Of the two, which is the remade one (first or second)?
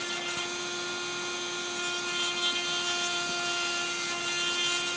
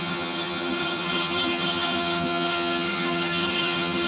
second